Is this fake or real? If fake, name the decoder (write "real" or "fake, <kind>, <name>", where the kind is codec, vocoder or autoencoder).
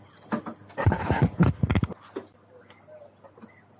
real